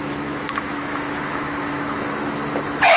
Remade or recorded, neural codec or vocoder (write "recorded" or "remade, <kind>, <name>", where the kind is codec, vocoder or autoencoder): remade, autoencoder, DAC-VAE